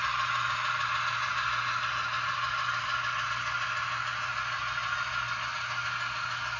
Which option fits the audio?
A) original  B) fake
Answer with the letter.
A